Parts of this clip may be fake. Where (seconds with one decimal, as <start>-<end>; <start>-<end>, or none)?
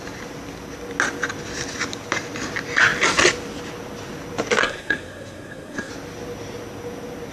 4.6-5.9